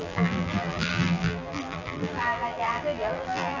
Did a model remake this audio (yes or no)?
yes